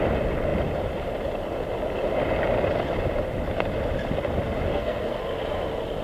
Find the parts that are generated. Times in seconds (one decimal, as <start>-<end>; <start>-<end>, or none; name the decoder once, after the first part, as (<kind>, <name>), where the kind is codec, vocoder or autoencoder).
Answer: 4.7-5.2 (codec, SNAC)